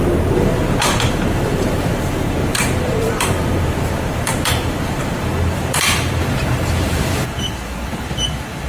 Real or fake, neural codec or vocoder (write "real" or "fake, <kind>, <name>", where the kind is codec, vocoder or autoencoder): fake, vocoder, BigVGAN v2